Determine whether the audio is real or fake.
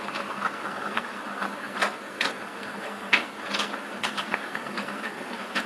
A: fake